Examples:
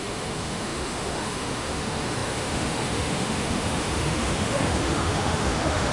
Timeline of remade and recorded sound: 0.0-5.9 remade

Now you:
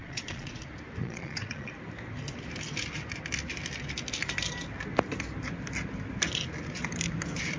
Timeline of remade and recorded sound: 0.0-0.6 remade; 0.6-1.0 recorded; 1.0-1.7 remade; 1.7-7.6 recorded

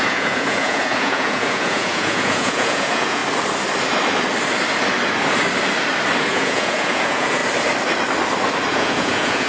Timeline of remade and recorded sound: 0.0-3.2 remade; 3.2-6.3 recorded; 6.3-7.4 remade; 7.4-8.7 recorded; 8.7-9.5 remade

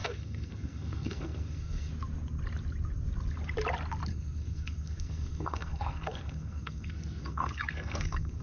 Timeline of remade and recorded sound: 0.0-1.9 remade; 1.9-4.1 recorded; 4.1-8.4 remade

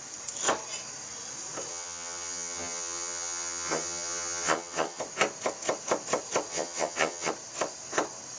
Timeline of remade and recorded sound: 0.0-1.7 recorded; 1.7-5.0 remade; 5.0-6.5 recorded; 6.5-7.3 remade; 7.3-8.4 recorded